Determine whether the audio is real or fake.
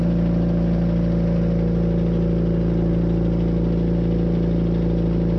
real